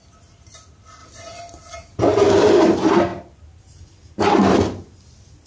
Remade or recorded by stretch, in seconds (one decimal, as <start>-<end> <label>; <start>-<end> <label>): 0.0-5.5 recorded